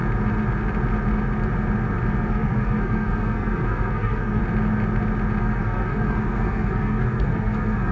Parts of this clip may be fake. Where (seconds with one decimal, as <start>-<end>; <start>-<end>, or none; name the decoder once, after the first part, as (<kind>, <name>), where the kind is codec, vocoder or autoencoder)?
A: 2.3-4.4 (codec, SNAC); 5.4-7.9